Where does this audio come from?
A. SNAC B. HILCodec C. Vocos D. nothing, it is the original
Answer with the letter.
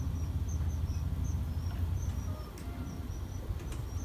D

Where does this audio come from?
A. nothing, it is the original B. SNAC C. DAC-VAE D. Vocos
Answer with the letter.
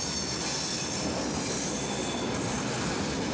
A